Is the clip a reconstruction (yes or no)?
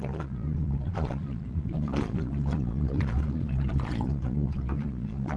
yes